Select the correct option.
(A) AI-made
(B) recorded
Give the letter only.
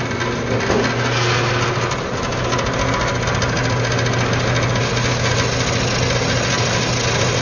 B